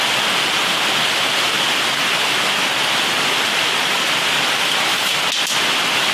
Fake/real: real